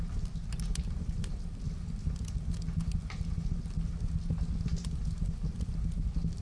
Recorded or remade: recorded